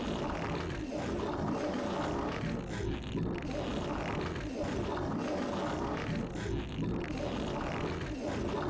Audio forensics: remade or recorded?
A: recorded